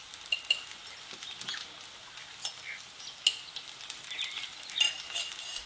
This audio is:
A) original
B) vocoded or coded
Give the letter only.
A